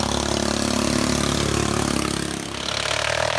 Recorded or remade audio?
recorded